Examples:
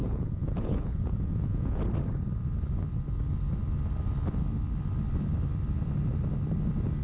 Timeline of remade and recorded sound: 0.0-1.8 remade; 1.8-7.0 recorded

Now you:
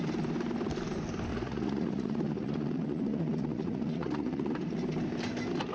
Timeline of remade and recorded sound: 0.0-1.3 recorded; 1.3-4.5 remade; 4.5-5.7 recorded

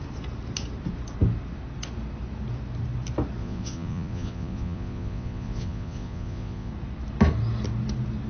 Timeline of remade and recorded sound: 0.0-3.4 recorded; 3.4-6.7 remade; 6.7-8.3 recorded

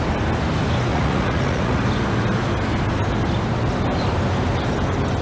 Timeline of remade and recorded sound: 0.0-0.9 recorded; 0.9-1.8 remade; 1.8-5.2 recorded

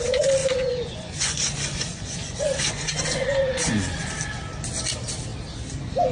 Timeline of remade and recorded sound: 0.0-0.4 recorded; 0.4-4.1 remade; 4.1-6.1 recorded